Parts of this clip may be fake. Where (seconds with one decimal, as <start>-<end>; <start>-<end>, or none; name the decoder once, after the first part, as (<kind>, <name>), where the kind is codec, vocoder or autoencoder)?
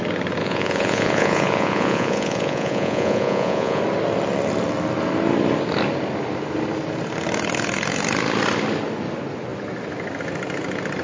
0.4-3.8 (vocoder, Vocos)